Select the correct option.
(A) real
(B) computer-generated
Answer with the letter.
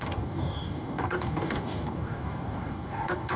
B